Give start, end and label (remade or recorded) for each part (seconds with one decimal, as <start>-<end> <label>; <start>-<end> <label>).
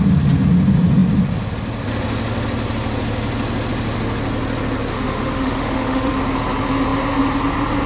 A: 0.0-4.9 recorded; 4.9-6.2 remade; 6.2-7.9 recorded